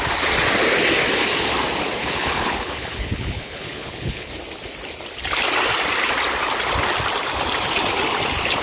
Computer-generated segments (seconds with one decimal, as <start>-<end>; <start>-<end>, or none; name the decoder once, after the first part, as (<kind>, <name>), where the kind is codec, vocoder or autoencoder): 2.0-4.3 (codec, HILCodec)